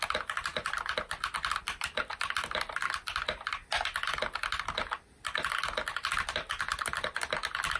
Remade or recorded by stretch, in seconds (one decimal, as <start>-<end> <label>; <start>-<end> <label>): 0.0-0.5 recorded; 0.5-3.1 remade; 3.1-7.8 recorded